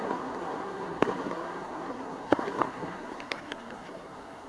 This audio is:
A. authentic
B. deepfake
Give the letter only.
B